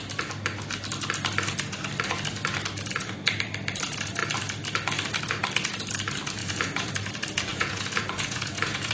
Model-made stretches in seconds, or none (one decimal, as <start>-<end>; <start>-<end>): 6.4-6.9; 7.5-8.9

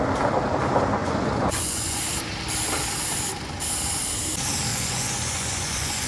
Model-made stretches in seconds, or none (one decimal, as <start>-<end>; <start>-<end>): 1.0-2.0; 4.7-6.1

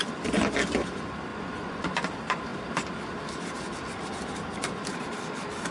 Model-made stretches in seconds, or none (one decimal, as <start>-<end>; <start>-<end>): 1.3-1.9

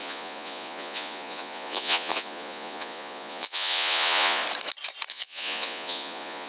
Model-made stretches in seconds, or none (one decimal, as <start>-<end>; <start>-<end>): 0.0-4.4; 5.1-6.5